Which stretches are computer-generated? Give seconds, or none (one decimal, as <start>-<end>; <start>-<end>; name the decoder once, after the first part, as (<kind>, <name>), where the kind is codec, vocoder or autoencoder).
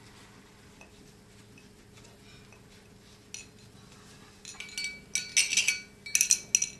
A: none